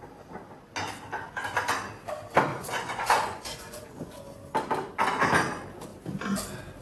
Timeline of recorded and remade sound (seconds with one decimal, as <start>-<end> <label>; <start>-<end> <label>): 0.0-2.5 recorded; 2.5-4.2 remade; 4.2-6.8 recorded